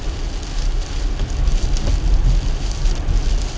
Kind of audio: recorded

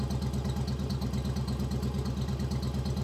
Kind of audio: recorded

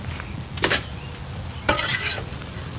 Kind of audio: recorded